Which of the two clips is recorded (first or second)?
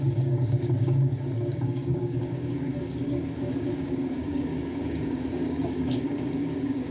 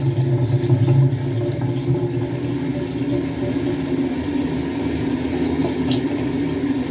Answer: second